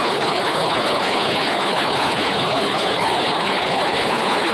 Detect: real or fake fake